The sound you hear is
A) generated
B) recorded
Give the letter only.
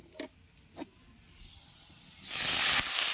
B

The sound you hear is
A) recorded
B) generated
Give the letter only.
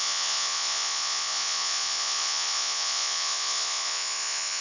B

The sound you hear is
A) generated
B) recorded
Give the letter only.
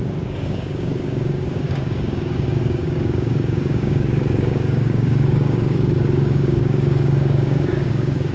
A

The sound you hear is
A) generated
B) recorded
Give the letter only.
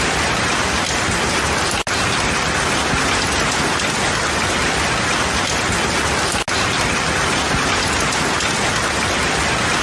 B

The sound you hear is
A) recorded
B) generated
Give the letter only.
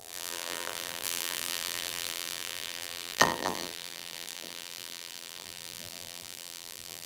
B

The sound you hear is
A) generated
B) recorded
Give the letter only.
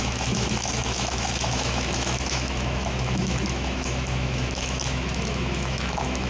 A